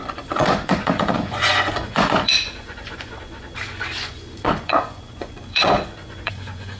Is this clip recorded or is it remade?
remade